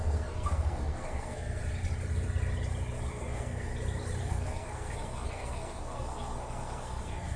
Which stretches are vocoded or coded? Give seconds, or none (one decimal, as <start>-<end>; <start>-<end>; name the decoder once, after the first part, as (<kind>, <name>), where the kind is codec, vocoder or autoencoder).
0.0-1.6 (codec, SNAC); 3.1-3.7; 4.2-7.4